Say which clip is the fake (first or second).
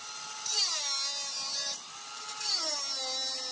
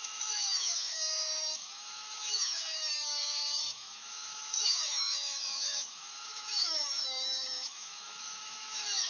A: second